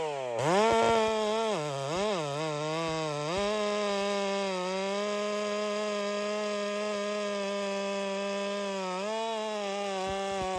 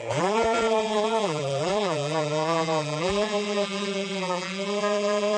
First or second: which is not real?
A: second